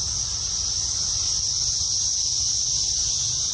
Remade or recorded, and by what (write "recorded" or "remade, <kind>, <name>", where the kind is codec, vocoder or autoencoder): recorded